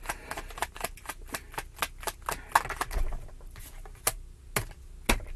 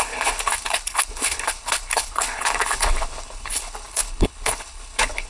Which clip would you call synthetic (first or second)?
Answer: second